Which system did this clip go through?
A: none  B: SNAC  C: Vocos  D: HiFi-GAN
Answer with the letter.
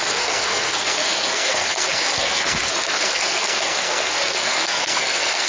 B